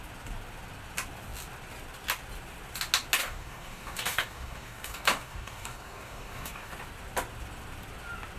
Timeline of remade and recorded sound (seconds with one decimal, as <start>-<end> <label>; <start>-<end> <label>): 0.0-3.2 recorded; 3.2-6.7 remade; 6.7-8.4 recorded